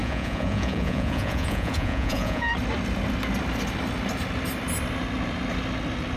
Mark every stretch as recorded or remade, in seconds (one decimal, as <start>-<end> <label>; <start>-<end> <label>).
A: 0.0-2.5 remade; 2.5-6.2 recorded